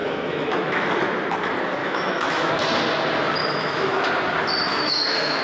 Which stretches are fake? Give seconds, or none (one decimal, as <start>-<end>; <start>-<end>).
0.0-1.0; 1.8-2.5; 3.4-4.1; 4.7-5.4